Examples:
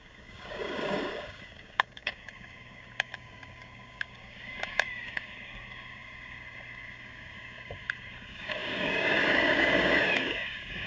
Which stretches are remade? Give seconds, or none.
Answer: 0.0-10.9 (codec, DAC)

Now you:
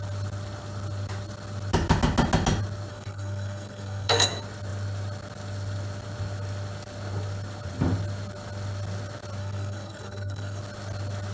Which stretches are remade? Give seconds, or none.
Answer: 2.9-4.3 (codec, SNAC); 9.4-10.6

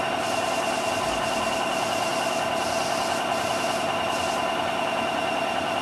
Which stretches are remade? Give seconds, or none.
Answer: none

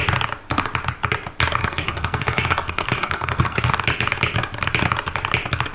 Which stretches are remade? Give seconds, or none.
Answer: 1.6-3.7 (codec, SNAC)